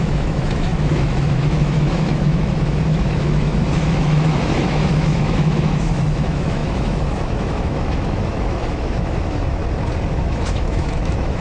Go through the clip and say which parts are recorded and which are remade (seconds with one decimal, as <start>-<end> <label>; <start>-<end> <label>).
0.0-9.6 remade; 9.6-10.1 recorded; 10.1-11.4 remade